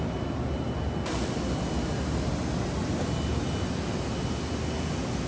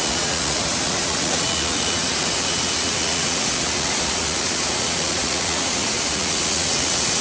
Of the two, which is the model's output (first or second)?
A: second